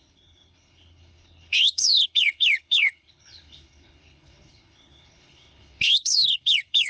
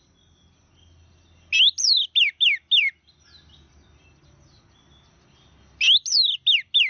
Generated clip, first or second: first